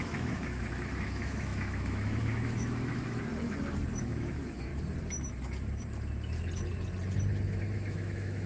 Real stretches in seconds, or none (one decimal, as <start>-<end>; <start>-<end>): 3.3-4.0; 4.7-7.6